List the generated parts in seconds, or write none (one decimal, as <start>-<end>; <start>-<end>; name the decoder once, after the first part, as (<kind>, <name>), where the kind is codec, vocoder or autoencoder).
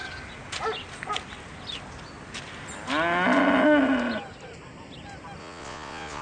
5.4-6.2 (vocoder, Vocos)